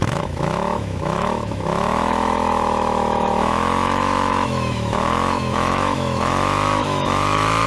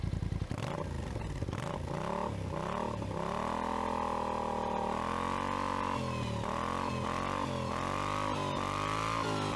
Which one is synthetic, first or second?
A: first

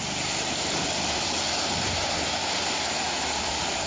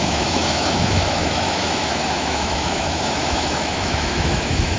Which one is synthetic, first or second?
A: second